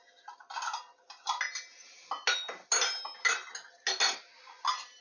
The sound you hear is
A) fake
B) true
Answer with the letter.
B